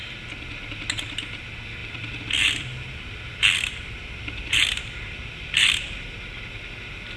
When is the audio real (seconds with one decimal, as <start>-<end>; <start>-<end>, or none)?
0.0-1.8; 6.1-7.2